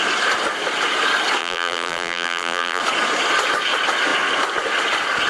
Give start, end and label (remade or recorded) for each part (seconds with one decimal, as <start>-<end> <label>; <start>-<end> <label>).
0.0-1.4 recorded; 1.4-2.8 remade; 2.8-5.3 recorded